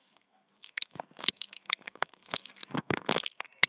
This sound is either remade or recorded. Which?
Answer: remade